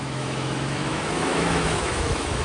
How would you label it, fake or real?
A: fake